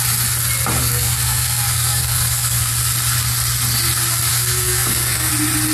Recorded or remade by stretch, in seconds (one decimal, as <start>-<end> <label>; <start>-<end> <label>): 0.0-0.8 recorded; 0.8-2.7 remade; 2.7-4.3 recorded; 4.3-5.3 remade; 5.3-5.7 recorded